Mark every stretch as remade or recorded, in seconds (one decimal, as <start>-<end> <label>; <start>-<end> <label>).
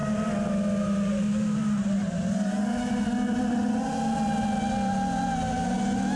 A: 0.0-6.2 recorded